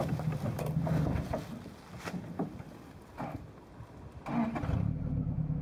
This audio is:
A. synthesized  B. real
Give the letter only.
B